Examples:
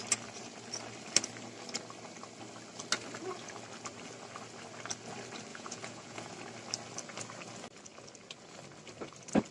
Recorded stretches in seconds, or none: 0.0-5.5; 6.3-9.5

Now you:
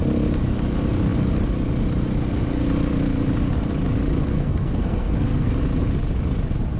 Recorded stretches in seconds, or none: 0.0-4.3; 5.5-6.8

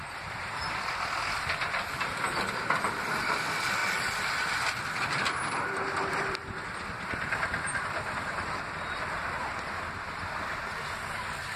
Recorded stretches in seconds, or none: 3.8-6.1; 9.2-11.2

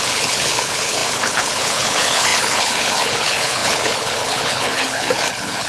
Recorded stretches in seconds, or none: none

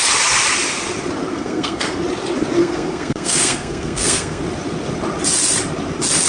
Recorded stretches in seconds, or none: 0.0-1.3; 2.0-2.6; 4.4-6.3

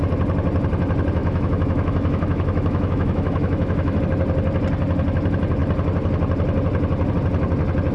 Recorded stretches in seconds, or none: 0.0-1.2; 4.0-7.9

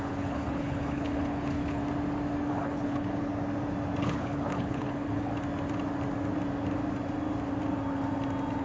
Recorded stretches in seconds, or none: 1.8-2.5; 3.3-4.0; 5.3-8.6